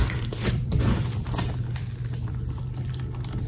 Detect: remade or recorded remade